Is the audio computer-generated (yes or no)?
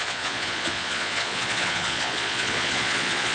yes